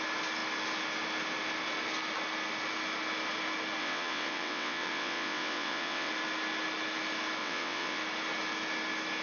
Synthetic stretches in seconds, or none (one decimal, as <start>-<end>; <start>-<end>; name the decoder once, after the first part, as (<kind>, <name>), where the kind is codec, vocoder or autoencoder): 3.8-6.1 (vocoder, WaveNeXt); 7.4-8.0